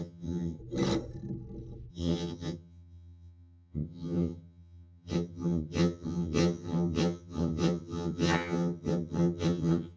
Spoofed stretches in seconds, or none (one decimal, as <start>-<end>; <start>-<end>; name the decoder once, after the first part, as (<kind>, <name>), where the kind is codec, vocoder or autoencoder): 0.0-0.6 (vocoder, HiFi-GAN); 1.9-10.0